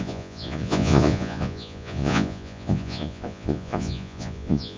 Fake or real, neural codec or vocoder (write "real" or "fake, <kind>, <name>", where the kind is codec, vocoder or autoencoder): fake, vocoder, Vocos